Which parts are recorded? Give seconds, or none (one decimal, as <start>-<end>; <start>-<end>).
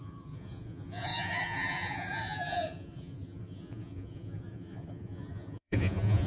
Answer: none